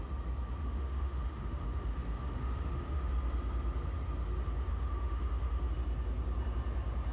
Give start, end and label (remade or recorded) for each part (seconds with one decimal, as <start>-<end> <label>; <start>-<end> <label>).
0.0-0.6 recorded; 0.6-3.1 remade; 3.1-4.7 recorded; 4.7-5.7 remade; 5.7-7.1 recorded